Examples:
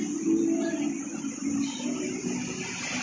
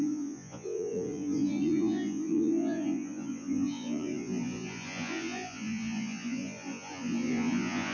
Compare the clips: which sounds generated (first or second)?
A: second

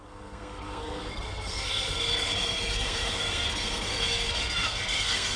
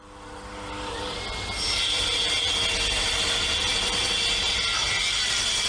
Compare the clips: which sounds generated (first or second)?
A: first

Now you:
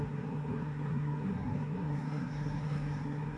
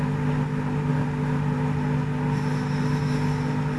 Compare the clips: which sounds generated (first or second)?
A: first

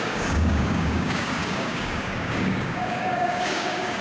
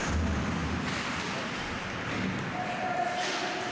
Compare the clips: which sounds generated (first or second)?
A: first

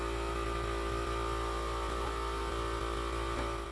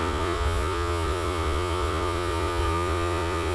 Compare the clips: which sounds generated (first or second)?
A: second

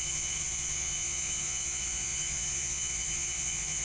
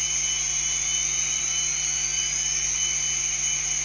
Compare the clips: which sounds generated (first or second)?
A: first